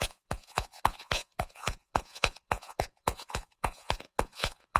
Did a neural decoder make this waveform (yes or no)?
yes